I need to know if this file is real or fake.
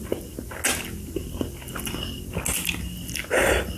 real